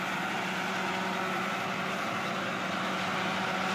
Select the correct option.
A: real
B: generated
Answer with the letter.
A